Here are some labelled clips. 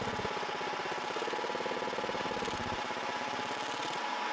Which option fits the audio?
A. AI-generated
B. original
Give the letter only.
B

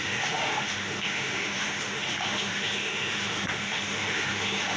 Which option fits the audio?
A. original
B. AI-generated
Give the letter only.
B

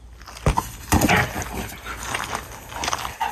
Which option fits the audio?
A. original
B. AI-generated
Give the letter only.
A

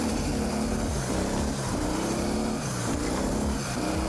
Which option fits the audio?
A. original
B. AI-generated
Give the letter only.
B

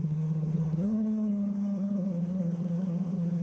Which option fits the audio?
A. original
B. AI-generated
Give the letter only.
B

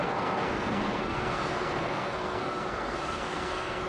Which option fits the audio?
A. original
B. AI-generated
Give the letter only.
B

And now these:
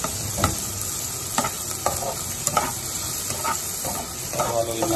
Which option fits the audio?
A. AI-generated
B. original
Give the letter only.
B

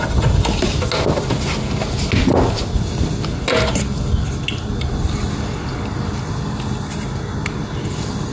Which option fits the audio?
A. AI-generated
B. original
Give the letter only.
B